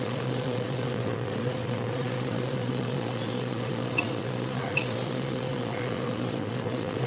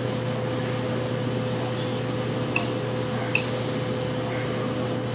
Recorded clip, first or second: second